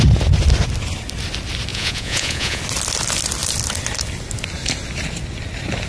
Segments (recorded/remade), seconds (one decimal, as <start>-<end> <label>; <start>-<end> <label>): 0.0-1.7 recorded; 1.7-2.6 remade; 2.6-5.9 recorded